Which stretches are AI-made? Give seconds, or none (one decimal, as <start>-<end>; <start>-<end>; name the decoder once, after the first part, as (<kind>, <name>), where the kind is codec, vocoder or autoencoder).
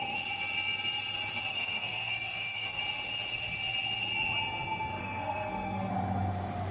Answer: 1.5-2.8 (codec, SNAC); 5.0-5.9